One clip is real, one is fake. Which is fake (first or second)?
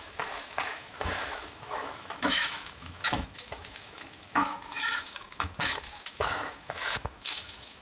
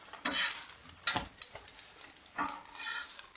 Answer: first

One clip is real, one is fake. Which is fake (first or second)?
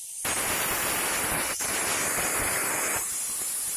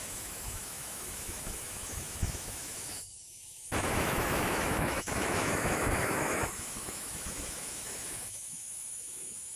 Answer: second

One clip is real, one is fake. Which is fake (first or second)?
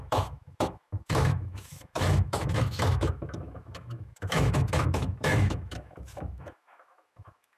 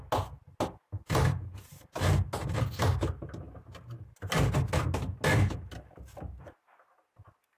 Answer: first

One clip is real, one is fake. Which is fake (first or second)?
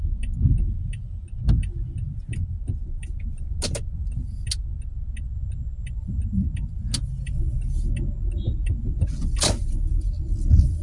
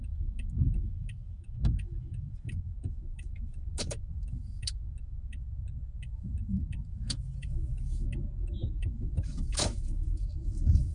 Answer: second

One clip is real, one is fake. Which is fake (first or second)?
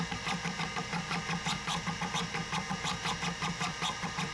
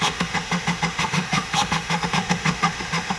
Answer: second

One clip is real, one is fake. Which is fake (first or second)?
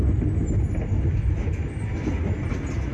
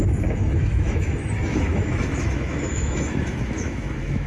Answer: second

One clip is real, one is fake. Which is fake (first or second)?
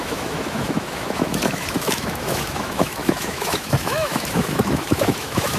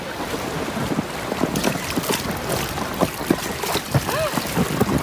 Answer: first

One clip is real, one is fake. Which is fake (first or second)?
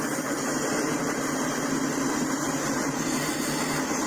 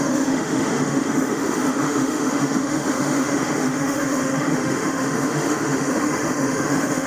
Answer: second